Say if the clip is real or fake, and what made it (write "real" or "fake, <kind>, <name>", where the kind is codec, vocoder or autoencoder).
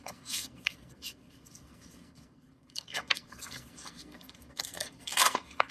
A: fake, codec, SNAC